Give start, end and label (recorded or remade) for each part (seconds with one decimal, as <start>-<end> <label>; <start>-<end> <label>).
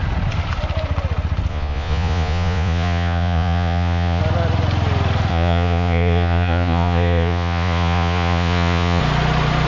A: 0.0-1.5 recorded; 1.5-4.2 remade; 4.2-5.3 recorded; 5.3-9.0 remade; 9.0-9.7 recorded